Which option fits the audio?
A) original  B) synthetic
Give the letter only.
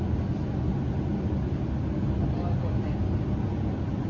A